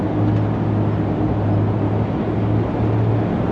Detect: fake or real real